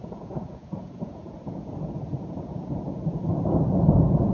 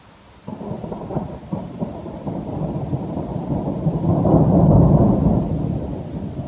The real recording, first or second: second